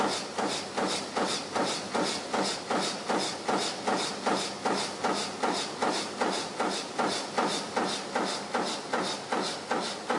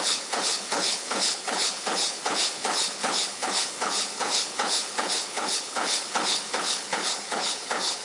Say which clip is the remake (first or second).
second